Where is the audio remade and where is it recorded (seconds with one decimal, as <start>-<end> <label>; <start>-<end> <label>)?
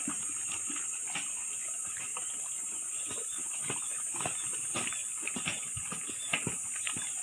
0.0-7.2 recorded